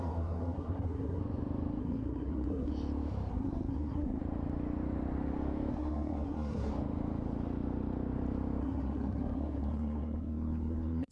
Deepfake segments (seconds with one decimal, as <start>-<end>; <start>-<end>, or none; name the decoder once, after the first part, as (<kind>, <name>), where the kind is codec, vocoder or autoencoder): 0.0-1.2 (codec, SNAC); 1.8-2.7; 3.3-4.2; 5.7-6.7; 8.6-11.1